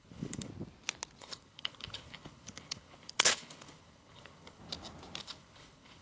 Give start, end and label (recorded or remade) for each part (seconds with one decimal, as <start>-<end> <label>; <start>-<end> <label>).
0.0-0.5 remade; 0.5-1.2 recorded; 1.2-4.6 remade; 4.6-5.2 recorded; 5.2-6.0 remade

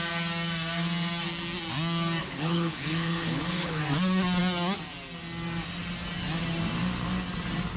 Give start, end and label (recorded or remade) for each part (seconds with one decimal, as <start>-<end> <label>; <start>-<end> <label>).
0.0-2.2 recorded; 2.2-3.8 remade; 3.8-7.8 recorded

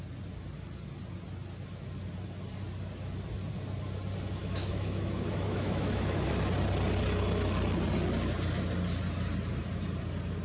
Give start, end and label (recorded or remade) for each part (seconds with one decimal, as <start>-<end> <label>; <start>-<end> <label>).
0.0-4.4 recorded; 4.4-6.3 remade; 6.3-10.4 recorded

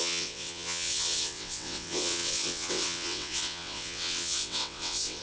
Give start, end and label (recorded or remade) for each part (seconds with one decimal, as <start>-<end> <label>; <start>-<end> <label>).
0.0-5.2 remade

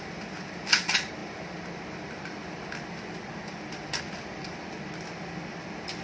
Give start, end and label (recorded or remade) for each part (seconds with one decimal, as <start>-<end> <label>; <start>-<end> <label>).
0.0-6.0 recorded